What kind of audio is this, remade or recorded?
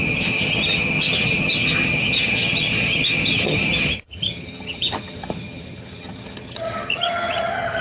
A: remade